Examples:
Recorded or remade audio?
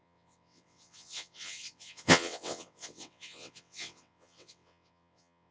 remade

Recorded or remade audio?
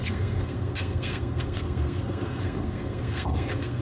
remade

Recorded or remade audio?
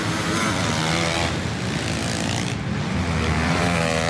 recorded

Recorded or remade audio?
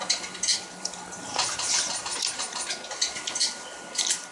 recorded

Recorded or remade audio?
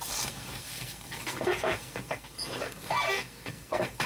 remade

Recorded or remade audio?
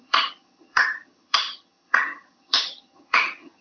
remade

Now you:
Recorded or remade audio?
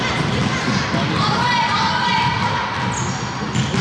recorded